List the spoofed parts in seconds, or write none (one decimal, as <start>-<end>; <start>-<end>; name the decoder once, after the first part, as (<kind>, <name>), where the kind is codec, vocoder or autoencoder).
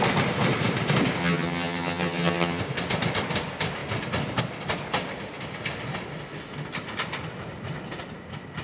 1.2-2.6 (vocoder, HiFi-GAN)